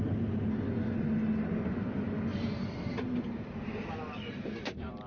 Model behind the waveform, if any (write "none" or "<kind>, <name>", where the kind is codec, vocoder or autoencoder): none